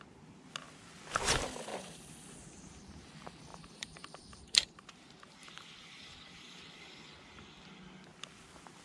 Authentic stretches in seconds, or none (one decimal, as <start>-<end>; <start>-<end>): 0.0-1.7; 2.8-3.5; 5.4-8.8